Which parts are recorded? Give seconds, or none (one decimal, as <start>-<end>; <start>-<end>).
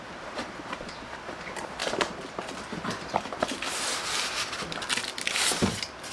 0.0-6.1